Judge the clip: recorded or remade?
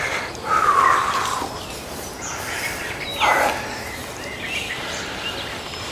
recorded